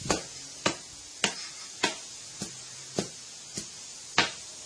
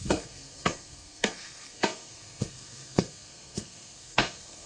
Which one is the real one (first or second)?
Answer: first